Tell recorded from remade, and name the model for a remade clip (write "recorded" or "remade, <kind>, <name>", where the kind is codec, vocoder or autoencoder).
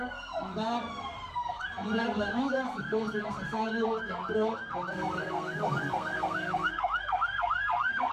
remade, codec, SNAC